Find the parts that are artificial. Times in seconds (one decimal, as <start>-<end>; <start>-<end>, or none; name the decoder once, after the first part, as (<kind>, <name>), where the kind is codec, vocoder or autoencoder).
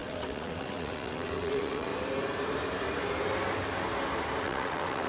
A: 0.0-1.9 (vocoder, WaveNeXt); 4.4-5.1